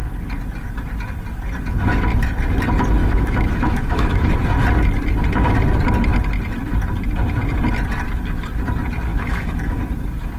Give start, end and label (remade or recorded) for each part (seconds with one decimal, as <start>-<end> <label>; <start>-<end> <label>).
0.0-3.0 recorded; 3.0-4.3 remade; 4.3-9.1 recorded; 9.1-9.8 remade; 9.8-10.4 recorded